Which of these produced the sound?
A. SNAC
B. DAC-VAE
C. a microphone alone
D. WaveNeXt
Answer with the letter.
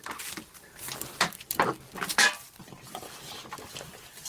C